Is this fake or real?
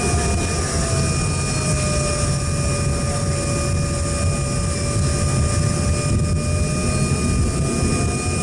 real